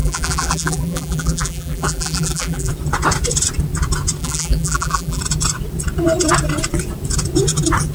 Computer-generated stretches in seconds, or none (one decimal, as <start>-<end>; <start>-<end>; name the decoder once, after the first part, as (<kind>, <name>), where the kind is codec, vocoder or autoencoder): 0.0-2.7 (vocoder, BigVGAN v2); 4.2-5.2